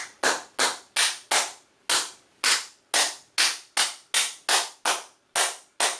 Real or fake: real